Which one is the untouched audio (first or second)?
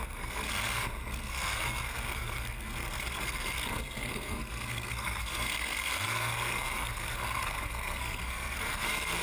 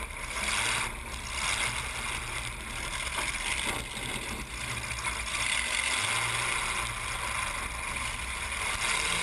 second